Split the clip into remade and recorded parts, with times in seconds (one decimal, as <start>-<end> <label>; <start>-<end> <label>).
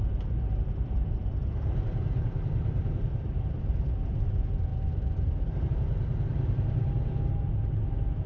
0.0-8.3 remade